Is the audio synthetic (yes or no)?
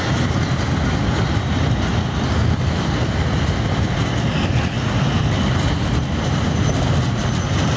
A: no